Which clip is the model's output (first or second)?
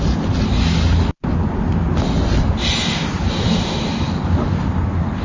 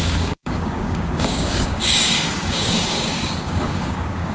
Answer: second